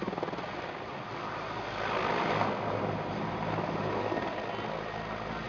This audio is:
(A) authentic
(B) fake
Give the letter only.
A